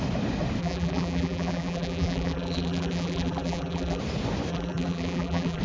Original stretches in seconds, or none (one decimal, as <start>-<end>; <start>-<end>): 0.0-0.6; 4.0-4.5